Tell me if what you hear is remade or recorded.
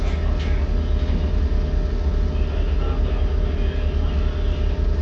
recorded